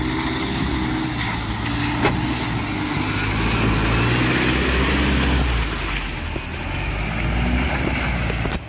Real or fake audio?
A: real